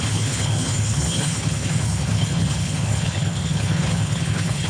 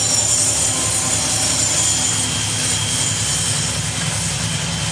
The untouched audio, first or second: second